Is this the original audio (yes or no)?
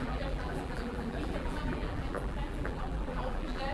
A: no